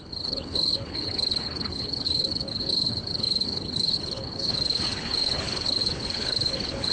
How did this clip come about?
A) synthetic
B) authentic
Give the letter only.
A